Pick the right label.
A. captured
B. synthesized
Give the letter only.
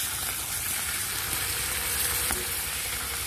A